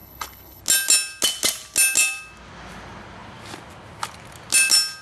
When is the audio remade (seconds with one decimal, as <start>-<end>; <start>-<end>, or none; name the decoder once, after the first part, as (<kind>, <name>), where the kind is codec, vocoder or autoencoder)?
0.0-0.6 (codec, HILCodec)